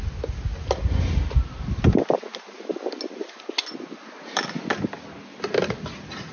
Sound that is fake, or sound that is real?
real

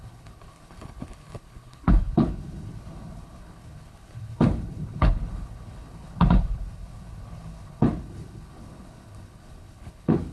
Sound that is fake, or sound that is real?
fake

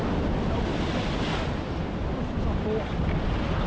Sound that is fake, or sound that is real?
real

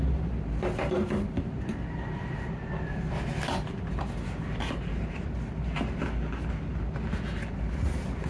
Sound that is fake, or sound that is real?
real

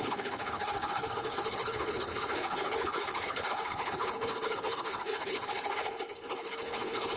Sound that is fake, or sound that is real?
fake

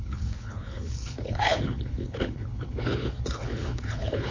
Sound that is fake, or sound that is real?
fake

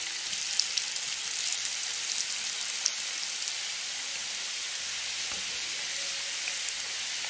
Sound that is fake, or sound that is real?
real